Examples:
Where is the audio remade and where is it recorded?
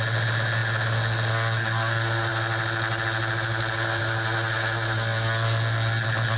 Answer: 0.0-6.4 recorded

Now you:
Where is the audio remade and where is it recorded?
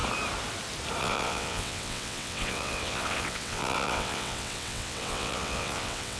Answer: 0.0-1.0 recorded; 1.0-6.2 remade